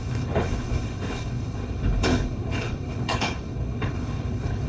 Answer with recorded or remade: remade